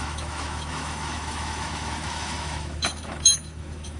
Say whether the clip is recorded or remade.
remade